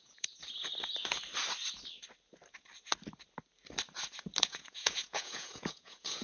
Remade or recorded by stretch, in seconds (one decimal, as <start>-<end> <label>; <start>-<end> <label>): 0.0-0.7 remade; 0.7-4.4 recorded; 4.4-6.2 remade